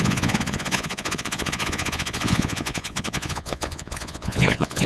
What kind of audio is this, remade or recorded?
remade